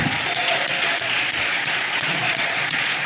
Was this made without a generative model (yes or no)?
no